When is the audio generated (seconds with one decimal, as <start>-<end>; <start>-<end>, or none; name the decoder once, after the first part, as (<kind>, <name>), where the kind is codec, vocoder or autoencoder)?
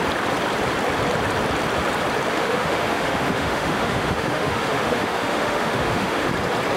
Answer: 2.3-6.3 (autoencoder, DAC-VAE)